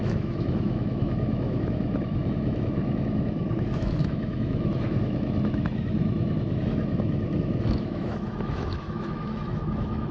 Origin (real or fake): fake